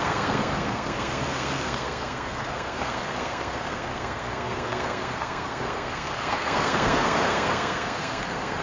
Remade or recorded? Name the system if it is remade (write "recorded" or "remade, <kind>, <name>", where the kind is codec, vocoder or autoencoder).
remade, codec, SNAC